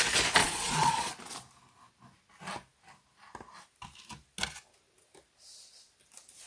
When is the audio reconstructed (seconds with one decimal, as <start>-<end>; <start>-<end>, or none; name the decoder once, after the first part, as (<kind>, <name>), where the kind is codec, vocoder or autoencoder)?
0.4-1.1 (vocoder, Vocos)

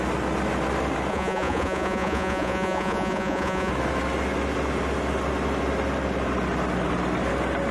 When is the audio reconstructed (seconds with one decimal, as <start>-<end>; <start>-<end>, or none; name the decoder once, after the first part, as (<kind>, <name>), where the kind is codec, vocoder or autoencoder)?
1.1-3.7 (vocoder, Vocos)

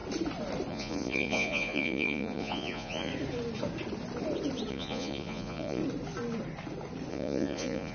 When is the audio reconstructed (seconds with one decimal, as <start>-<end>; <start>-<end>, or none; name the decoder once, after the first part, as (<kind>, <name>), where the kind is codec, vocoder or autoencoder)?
0.7-3.1 (vocoder, Vocos); 4.7-5.8; 7.1-7.9

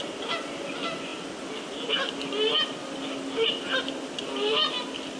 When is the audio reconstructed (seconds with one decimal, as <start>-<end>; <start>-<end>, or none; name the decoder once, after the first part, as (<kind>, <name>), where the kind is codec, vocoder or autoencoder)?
none

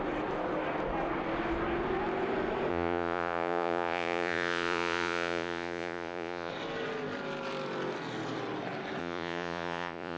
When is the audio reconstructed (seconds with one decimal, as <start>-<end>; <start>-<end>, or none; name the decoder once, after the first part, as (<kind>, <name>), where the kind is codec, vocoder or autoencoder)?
2.7-6.5 (vocoder, Vocos); 9.0-10.2

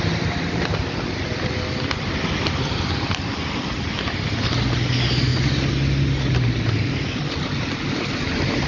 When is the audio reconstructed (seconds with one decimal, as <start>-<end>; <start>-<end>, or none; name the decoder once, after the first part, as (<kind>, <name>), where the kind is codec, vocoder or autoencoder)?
none